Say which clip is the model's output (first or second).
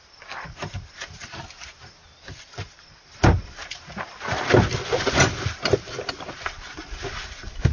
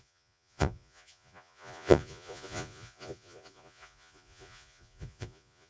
second